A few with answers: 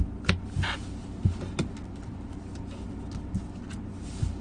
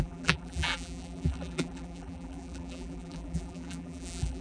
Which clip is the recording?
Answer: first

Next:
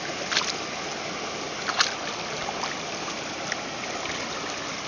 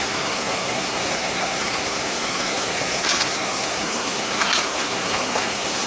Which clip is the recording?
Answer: first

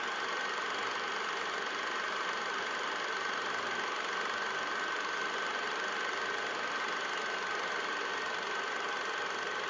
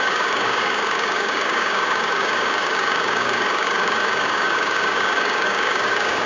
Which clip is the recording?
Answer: first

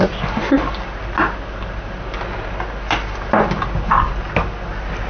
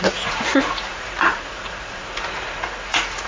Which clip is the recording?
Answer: first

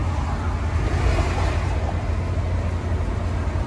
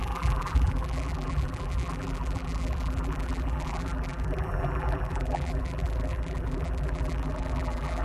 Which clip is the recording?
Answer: first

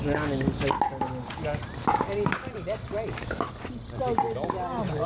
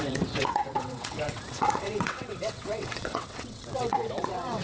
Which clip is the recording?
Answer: first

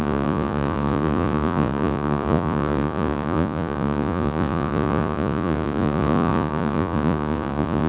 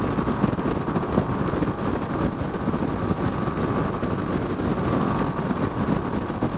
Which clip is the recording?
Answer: second